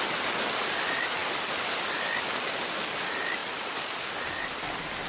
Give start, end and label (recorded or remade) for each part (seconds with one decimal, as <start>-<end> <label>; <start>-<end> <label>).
0.0-5.1 recorded